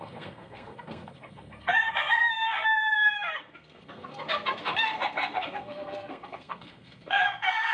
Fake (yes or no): yes